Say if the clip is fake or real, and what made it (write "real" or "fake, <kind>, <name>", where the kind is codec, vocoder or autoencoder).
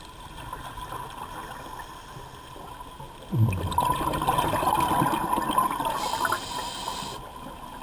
real